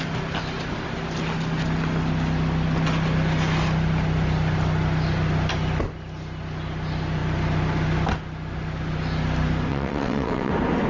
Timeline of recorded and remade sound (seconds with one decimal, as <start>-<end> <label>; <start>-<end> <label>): 0.0-9.7 recorded; 9.7-10.5 remade; 10.5-10.9 recorded